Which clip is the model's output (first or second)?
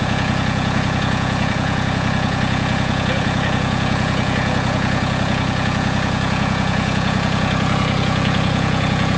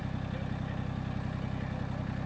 first